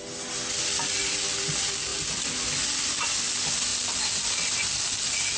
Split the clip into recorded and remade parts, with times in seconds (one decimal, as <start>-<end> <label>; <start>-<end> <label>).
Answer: 0.0-5.4 recorded